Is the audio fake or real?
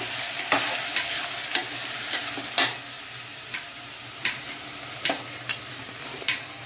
fake